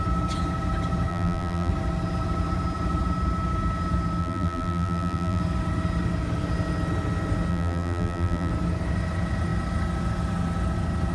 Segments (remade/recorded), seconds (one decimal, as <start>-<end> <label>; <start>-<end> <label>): 0.0-1.1 recorded; 1.1-1.7 remade; 1.7-4.2 recorded; 4.2-5.4 remade; 5.4-7.5 recorded; 7.5-8.5 remade; 8.5-11.1 recorded